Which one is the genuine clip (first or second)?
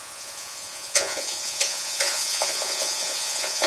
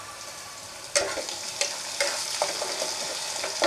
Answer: second